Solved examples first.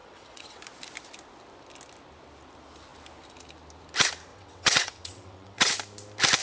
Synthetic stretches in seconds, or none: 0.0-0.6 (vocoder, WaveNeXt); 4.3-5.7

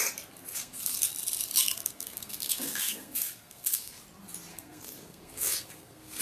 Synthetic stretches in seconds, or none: 0.5-1.1 (codec, SNAC); 1.8-4.0; 4.5-6.2